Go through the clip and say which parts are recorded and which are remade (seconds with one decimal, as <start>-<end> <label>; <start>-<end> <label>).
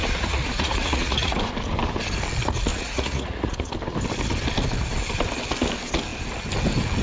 0.0-1.4 remade; 1.4-2.7 recorded; 2.7-3.7 remade; 3.7-7.0 recorded